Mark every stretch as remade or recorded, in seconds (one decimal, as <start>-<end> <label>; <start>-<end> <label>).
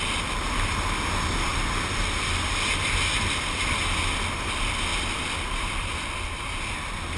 0.0-7.2 recorded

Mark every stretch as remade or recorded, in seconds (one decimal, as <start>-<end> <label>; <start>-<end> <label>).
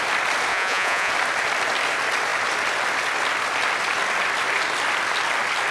0.0-0.5 recorded; 0.5-1.1 remade; 1.1-5.7 recorded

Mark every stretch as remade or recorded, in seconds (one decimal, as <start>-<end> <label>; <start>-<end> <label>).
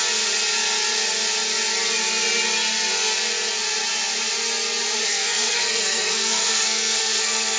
0.0-5.0 recorded; 5.0-7.6 remade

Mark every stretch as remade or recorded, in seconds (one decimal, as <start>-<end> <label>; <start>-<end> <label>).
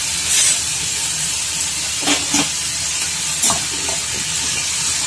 0.0-5.1 recorded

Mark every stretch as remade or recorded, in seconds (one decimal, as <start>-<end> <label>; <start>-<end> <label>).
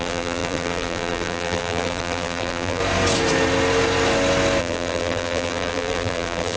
0.0-2.8 remade; 2.8-4.6 recorded; 4.6-6.6 remade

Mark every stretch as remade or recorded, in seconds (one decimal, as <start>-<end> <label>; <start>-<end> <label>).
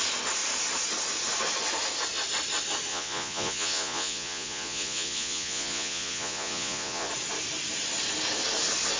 0.0-2.9 recorded; 2.9-7.1 remade; 7.1-9.0 recorded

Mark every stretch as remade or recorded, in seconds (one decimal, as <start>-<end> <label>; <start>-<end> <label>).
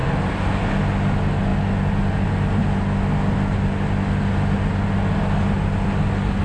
0.0-6.4 recorded